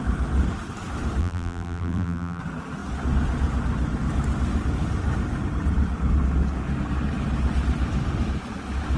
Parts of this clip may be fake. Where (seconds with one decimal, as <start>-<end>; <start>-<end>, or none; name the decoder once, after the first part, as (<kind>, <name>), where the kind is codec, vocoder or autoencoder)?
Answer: 1.2-2.4 (vocoder, BigVGAN v2)